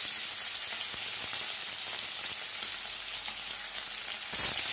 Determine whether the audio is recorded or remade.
recorded